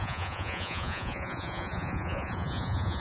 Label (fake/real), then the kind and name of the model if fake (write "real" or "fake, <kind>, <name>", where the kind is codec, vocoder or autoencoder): fake, vocoder, Vocos